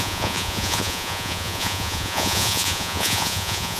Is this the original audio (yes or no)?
no